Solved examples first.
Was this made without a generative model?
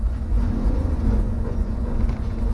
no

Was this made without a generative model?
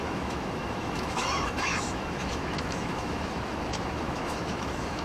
no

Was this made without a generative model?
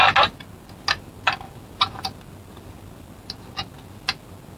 yes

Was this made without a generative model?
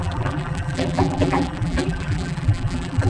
no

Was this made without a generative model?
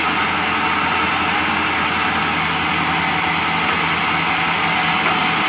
yes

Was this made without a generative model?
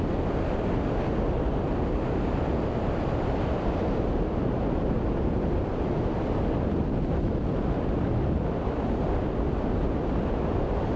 yes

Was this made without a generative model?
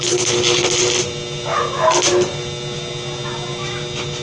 yes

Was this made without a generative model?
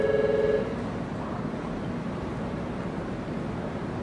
yes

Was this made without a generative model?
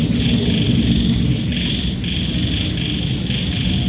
yes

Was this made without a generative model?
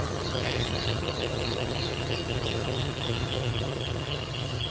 no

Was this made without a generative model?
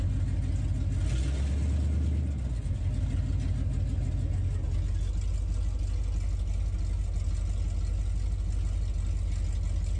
yes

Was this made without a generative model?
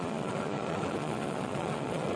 no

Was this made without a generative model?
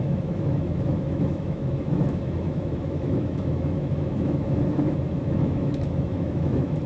no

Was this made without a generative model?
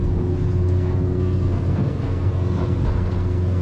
no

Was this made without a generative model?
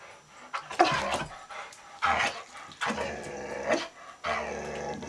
yes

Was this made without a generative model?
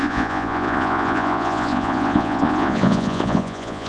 no